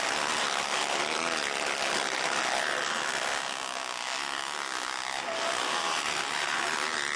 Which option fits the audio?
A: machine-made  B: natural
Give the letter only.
B